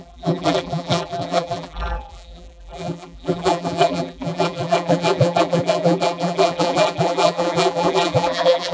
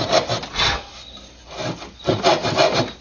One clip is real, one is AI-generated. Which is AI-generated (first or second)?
first